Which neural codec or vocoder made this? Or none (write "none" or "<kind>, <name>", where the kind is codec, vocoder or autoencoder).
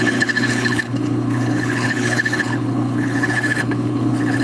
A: codec, HILCodec